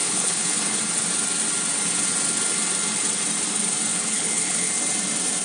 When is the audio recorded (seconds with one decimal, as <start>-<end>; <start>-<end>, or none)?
0.8-3.9; 4.7-5.4

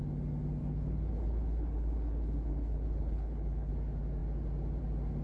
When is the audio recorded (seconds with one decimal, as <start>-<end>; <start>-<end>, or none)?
0.0-0.6; 3.7-5.2

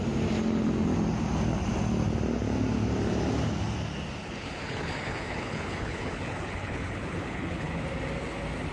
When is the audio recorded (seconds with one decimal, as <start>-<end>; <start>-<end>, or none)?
0.0-4.2; 7.8-8.7

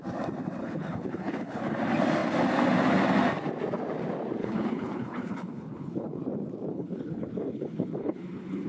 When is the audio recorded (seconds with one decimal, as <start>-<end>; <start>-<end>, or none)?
0.0-0.6; 1.6-4.4; 6.2-6.7